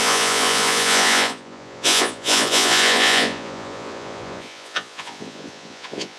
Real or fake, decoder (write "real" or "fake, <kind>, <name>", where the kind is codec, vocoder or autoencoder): fake, vocoder, Vocos